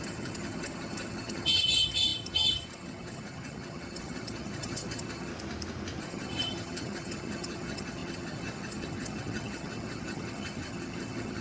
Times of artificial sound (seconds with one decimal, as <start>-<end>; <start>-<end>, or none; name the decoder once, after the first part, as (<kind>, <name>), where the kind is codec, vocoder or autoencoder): 0.0-5.3 (vocoder, HiFi-GAN); 6.0-11.4